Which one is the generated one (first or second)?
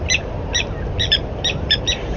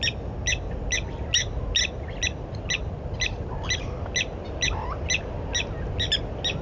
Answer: first